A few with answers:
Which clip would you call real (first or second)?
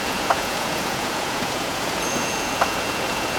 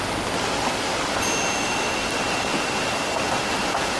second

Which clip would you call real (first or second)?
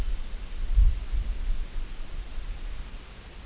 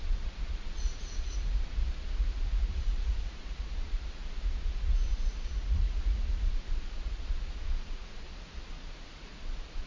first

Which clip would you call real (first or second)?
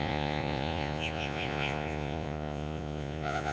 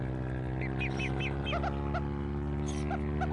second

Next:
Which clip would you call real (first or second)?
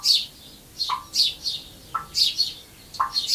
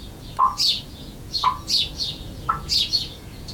first